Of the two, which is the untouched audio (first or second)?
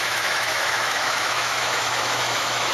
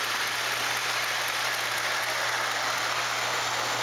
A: second